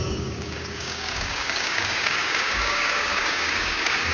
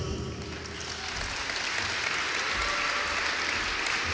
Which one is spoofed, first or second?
first